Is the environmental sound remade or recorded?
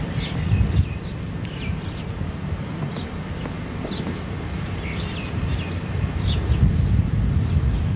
recorded